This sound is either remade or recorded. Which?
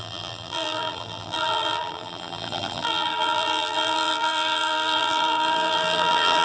remade